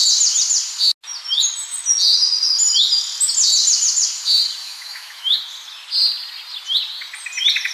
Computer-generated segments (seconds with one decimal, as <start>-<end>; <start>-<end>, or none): 4.6-5.4